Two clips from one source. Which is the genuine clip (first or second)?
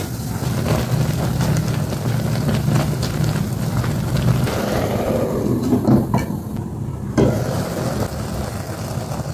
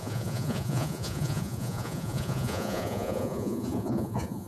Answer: first